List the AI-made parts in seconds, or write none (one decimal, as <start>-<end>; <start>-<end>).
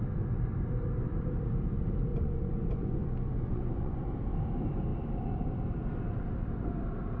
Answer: 2.1-4.0